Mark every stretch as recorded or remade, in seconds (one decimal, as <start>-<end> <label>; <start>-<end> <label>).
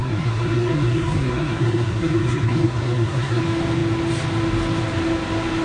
0.0-3.4 remade; 3.4-5.6 recorded